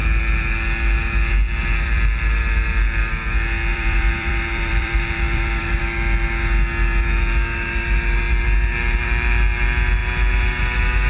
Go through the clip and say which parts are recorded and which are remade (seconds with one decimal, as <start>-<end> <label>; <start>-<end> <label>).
0.0-3.7 recorded; 3.7-5.8 remade; 5.8-11.1 recorded